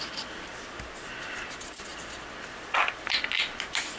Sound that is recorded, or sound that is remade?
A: recorded